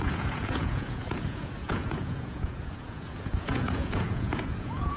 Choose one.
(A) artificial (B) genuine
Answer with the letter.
A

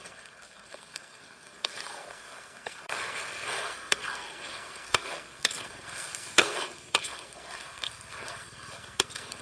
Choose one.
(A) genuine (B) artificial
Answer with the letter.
B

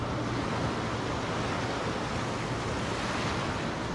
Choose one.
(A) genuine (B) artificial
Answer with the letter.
A